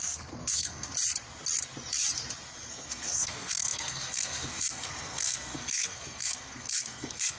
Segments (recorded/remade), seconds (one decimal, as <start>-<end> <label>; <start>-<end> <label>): 0.0-0.9 remade; 0.9-2.7 recorded; 2.7-7.4 remade